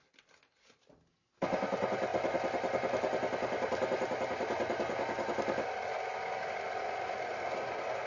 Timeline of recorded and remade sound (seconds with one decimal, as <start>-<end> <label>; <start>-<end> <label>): 0.0-8.1 recorded